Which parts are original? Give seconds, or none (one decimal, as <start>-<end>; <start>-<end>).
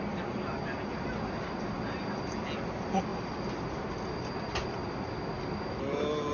0.0-6.3